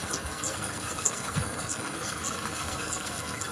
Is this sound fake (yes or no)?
yes